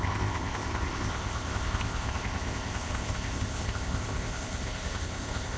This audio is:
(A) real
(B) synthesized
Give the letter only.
B